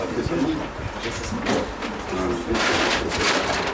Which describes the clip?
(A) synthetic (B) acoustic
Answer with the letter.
B